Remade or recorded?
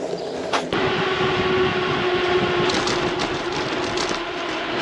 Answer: recorded